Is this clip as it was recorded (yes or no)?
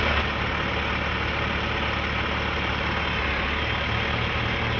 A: yes